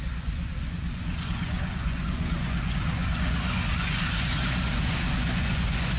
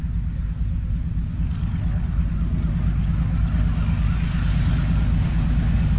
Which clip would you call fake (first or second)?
first